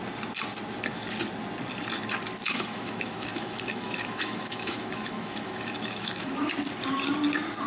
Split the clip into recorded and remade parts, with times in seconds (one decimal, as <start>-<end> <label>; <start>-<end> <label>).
0.0-2.4 recorded; 2.4-6.5 remade; 6.5-7.7 recorded